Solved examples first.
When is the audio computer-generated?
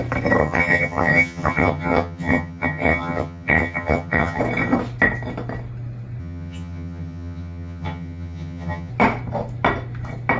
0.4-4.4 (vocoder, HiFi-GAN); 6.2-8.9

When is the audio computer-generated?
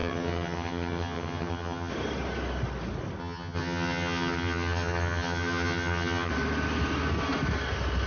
0.0-1.9 (vocoder, HiFi-GAN); 3.2-6.3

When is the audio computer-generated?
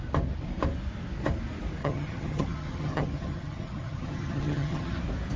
1.8-5.0 (vocoder, HiFi-GAN)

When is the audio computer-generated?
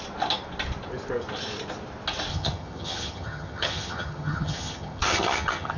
2.3-5.8 (vocoder, HiFi-GAN)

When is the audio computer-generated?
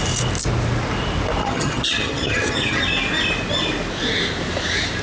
1.4-2.8 (vocoder, HiFi-GAN)